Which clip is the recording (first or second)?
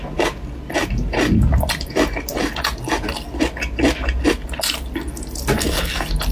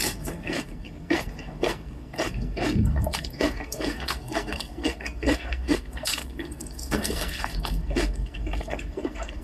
first